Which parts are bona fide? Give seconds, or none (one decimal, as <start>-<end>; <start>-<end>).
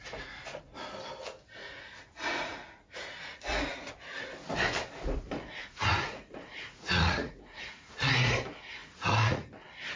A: 0.6-1.6; 3.9-5.6; 8.1-8.8; 9.5-10.0